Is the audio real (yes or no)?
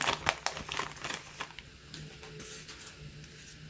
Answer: yes